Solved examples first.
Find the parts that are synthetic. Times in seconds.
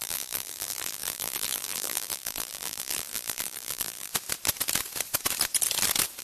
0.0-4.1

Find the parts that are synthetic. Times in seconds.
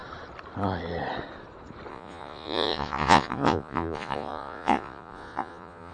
1.9-5.9